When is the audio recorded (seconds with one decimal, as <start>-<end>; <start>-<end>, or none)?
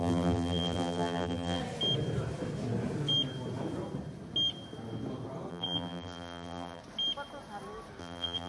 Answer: 1.6-5.5; 6.8-8.0